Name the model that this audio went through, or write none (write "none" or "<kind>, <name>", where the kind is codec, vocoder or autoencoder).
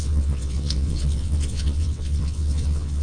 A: vocoder, WaveNeXt